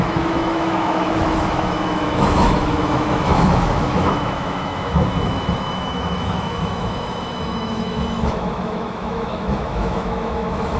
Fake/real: fake